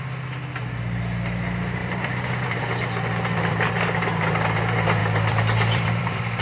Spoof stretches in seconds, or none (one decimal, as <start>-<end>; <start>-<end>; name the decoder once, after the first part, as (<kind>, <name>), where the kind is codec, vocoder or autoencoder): 1.8-3.7 (vocoder, BigVGAN v2); 5.0-6.4